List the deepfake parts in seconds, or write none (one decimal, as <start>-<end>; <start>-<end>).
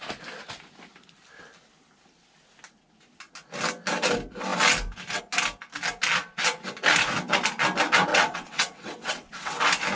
8.1-9.6